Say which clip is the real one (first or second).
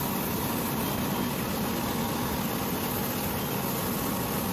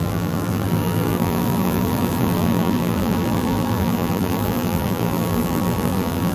first